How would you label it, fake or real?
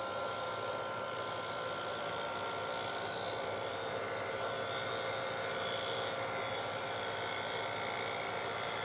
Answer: real